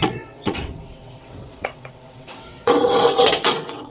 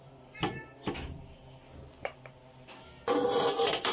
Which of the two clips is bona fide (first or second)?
second